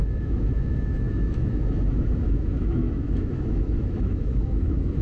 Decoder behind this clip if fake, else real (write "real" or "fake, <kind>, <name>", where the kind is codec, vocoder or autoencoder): fake, autoencoder, DAC-VAE